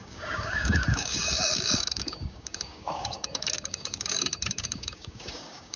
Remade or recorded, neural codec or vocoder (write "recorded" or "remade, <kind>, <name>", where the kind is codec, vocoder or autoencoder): remade, codec, DAC